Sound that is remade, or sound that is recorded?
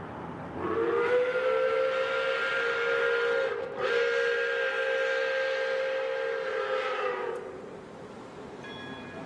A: recorded